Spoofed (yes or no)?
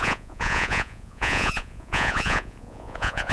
yes